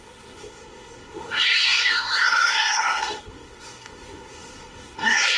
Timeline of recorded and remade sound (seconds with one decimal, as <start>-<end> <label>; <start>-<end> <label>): 0.0-5.4 remade